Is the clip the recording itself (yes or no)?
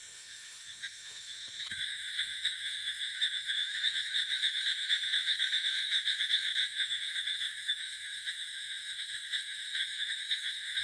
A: no